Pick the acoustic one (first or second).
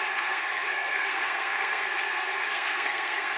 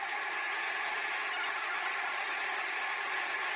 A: second